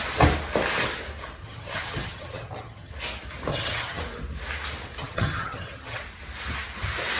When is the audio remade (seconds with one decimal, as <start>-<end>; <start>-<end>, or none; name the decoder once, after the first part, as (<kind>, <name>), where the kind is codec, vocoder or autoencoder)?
1.4-2.9 (vocoder, HiFi-GAN); 3.5-4.0; 5.0-6.0